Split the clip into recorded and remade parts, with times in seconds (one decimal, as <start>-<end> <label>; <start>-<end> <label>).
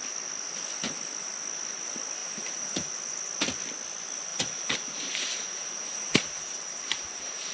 0.0-2.2 recorded; 2.2-2.9 remade; 2.9-4.3 recorded; 4.3-7.5 remade